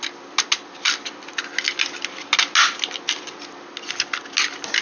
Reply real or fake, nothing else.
real